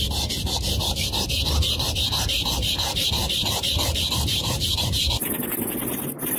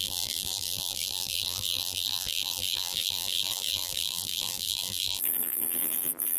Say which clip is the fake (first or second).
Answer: second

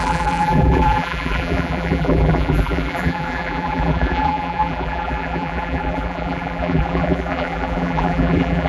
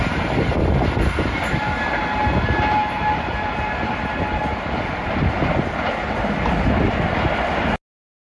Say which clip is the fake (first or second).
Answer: first